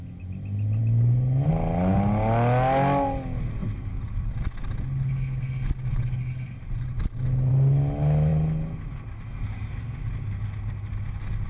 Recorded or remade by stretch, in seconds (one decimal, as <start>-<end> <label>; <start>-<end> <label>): 0.0-11.5 recorded